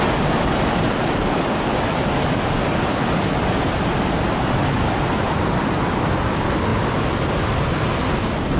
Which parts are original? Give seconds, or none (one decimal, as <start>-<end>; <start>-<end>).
0.0-8.6